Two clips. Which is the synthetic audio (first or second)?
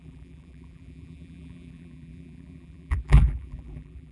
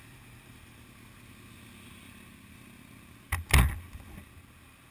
first